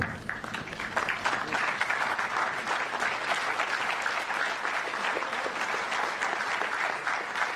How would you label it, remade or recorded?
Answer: recorded